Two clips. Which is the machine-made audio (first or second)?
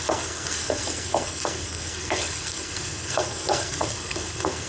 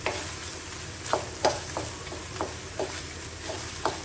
first